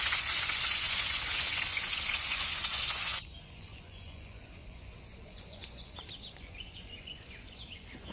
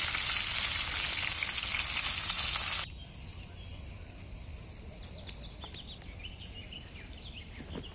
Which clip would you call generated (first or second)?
first